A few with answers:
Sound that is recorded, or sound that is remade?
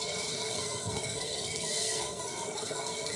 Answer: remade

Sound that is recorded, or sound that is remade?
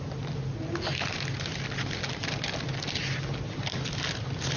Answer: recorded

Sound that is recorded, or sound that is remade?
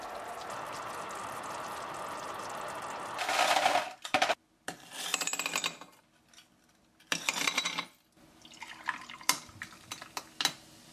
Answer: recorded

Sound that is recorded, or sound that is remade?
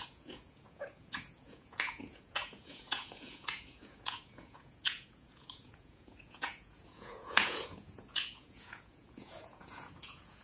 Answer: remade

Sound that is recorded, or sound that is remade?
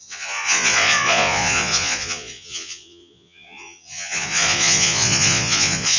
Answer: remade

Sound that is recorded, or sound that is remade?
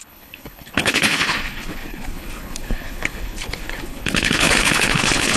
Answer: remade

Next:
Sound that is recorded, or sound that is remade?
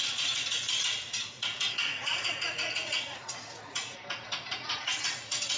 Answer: remade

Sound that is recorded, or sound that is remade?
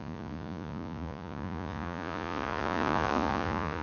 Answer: remade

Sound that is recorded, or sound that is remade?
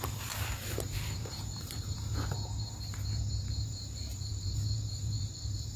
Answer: remade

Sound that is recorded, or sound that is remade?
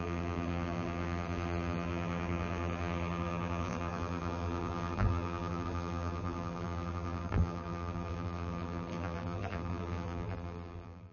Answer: remade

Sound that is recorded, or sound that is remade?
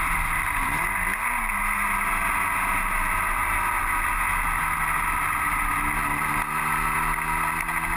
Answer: recorded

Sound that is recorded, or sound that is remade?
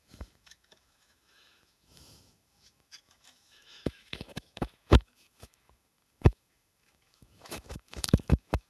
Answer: remade